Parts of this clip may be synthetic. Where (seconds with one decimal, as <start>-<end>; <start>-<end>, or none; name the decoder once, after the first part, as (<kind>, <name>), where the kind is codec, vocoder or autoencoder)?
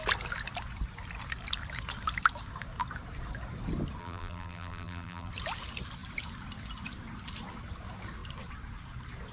4.0-5.3 (vocoder, BigVGAN v2)